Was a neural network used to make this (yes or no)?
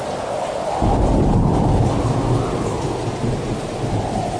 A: no